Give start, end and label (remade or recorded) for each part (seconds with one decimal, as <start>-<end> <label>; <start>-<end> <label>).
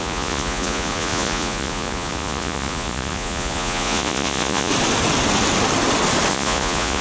0.0-4.7 remade; 4.7-6.3 recorded; 6.3-7.0 remade